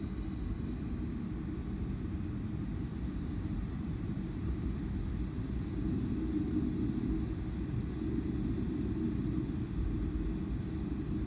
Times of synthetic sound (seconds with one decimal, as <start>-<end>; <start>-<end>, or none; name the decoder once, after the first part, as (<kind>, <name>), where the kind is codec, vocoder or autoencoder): 2.9-5.1 (vocoder, BigVGAN v2)